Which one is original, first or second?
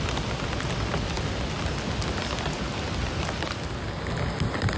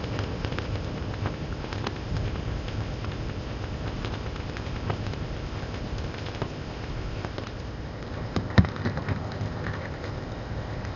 first